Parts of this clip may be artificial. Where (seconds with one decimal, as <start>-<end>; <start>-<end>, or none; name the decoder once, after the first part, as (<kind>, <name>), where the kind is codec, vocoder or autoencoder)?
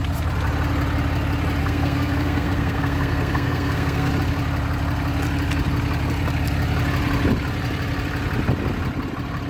1.6-4.1 (codec, SNAC)